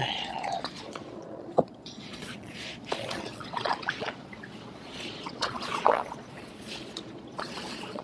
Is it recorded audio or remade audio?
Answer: remade